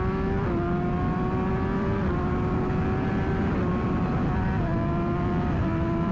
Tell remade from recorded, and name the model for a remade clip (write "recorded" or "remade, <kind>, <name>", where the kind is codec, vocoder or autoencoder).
recorded